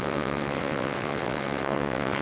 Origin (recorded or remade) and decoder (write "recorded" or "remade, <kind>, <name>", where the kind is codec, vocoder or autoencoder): remade, vocoder, WaveNeXt